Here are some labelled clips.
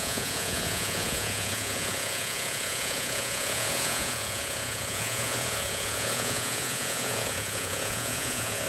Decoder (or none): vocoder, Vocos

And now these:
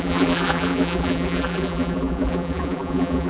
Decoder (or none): vocoder, BigVGAN v2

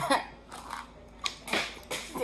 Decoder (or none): none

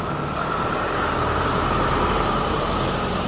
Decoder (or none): vocoder, BigVGAN v2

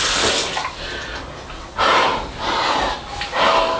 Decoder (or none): none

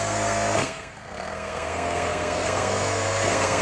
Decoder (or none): codec, SNAC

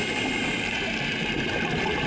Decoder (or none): none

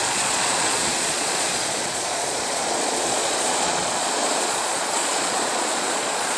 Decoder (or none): vocoder, Vocos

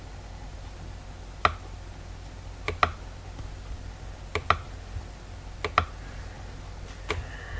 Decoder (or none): none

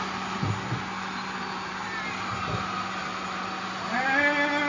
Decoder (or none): none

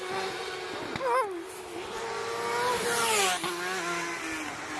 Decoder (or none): none